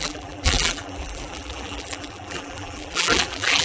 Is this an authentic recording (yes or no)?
no